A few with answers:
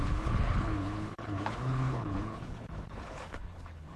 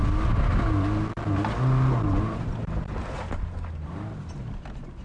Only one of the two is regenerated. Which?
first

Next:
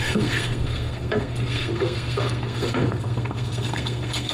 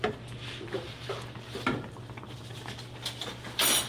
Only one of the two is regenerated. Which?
first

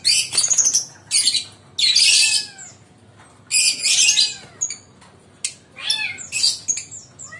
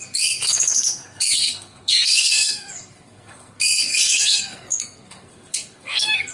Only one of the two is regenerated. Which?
second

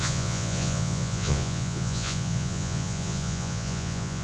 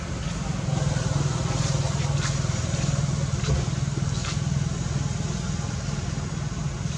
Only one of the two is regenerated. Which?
first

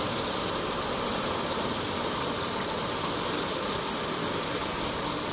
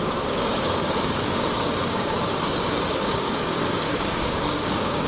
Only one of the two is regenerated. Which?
second